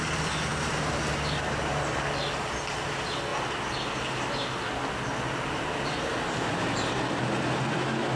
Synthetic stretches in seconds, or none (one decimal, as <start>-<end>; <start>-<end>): none